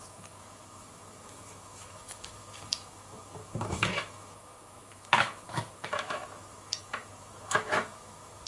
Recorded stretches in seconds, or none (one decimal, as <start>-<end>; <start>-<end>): none